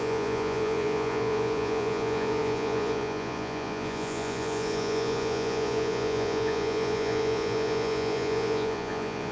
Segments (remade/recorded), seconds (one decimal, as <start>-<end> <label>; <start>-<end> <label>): 0.0-9.3 remade